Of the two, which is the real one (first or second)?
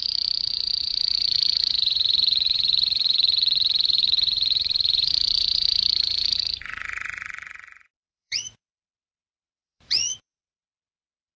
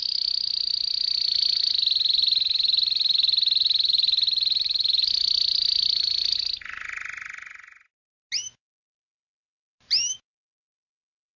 second